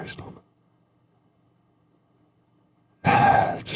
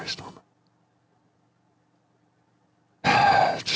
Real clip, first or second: second